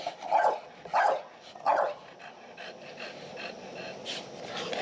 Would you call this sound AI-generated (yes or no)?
no